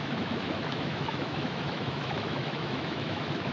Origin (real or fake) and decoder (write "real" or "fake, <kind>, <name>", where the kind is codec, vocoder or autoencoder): fake, autoencoder, DAC-VAE